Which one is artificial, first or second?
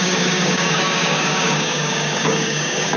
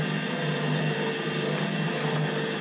first